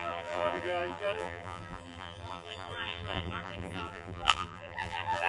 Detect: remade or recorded remade